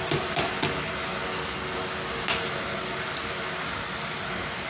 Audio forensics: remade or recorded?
recorded